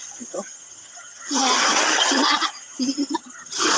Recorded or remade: remade